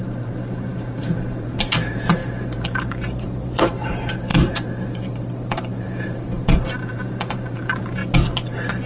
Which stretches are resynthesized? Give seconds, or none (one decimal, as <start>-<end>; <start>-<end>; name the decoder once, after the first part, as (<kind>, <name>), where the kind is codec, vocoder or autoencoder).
0.0-8.0 (vocoder, BigVGAN v2)